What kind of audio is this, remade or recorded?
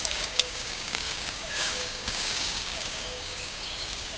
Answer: remade